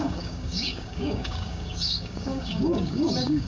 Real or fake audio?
fake